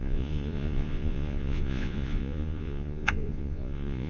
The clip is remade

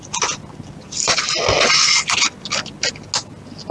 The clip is recorded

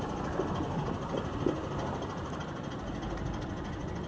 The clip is recorded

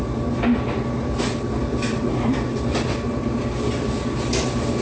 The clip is recorded